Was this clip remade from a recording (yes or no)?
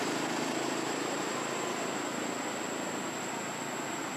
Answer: no